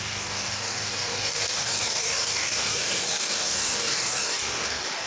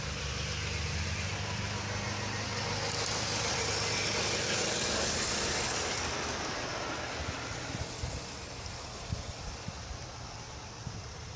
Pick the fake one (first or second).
first